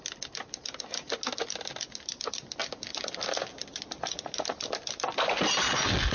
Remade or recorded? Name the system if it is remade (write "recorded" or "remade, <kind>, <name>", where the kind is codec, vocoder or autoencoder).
recorded